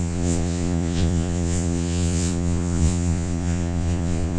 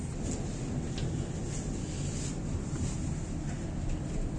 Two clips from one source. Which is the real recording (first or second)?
second